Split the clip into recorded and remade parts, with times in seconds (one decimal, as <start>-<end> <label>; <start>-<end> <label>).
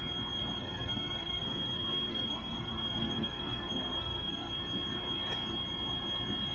0.0-0.6 recorded; 0.6-4.5 remade; 4.5-6.5 recorded